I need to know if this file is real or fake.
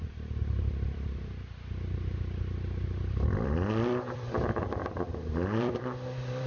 fake